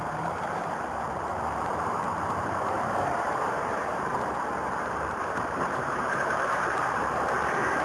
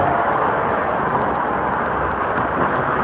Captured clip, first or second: second